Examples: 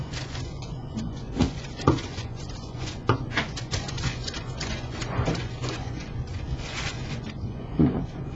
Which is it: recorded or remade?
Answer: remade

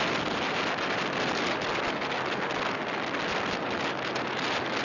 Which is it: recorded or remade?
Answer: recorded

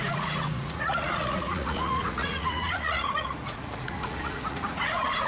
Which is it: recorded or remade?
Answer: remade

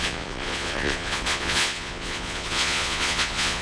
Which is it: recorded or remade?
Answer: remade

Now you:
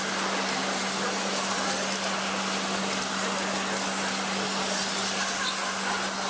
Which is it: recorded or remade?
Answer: recorded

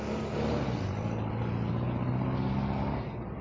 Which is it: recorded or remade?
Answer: recorded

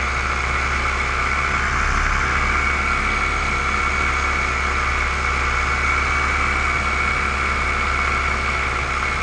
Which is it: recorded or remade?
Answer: recorded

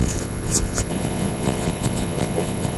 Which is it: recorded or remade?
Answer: remade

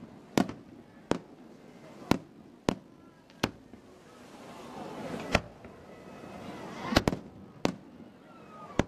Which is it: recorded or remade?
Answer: recorded